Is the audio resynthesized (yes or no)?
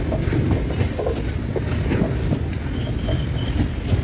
no